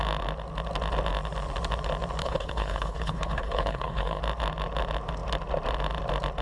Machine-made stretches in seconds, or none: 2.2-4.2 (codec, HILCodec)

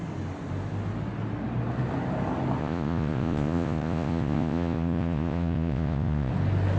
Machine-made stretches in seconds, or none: 2.6-6.3 (vocoder, Vocos)